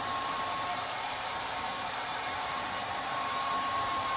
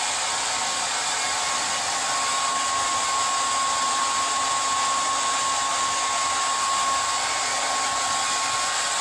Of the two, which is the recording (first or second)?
second